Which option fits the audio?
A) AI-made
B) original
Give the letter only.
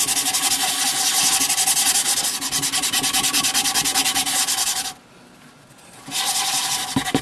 B